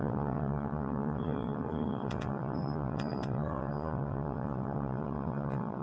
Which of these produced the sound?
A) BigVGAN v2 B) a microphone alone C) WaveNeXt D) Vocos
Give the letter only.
C